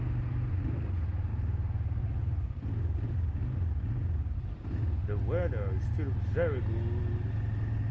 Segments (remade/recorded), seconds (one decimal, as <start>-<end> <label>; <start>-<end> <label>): 0.0-7.9 recorded